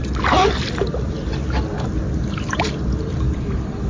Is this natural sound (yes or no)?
yes